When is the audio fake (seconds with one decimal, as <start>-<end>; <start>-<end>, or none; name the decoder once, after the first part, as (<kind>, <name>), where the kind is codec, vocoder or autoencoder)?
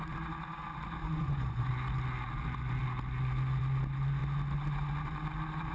1.0-1.7 (vocoder, Vocos)